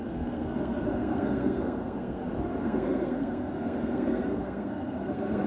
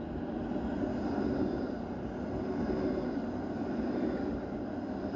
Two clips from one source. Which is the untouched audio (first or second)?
second